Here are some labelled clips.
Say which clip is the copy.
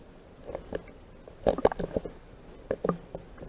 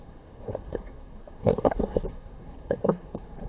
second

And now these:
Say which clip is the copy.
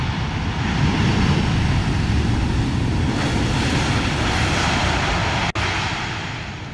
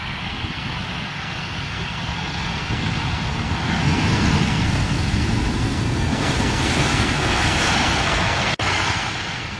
second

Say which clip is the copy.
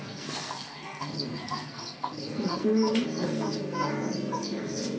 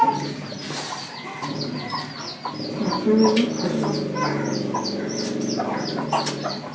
first